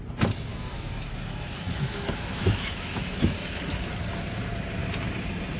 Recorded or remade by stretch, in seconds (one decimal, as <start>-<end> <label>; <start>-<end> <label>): 0.0-0.5 recorded; 0.5-3.9 remade; 3.9-5.6 recorded